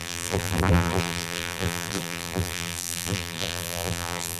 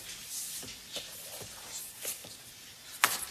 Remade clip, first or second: first